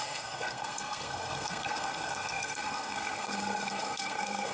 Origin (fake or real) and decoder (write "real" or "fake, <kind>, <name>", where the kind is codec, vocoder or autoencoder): fake, codec, SNAC